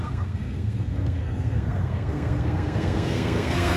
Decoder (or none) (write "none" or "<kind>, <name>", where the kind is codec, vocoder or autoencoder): codec, SNAC